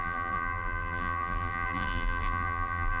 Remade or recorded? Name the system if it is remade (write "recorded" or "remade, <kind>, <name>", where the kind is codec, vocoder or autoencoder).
remade, vocoder, BigVGAN v2